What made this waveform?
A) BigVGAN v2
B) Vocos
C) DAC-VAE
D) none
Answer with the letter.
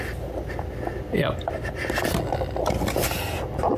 D